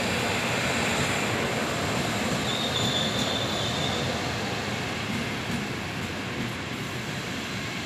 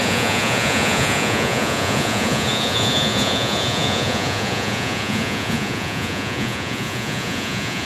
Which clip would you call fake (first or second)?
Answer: second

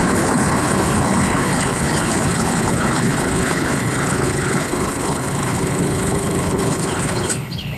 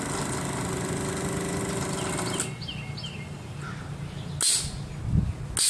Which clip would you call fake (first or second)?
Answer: first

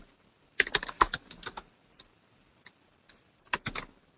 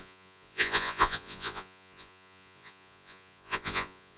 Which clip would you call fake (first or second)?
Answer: second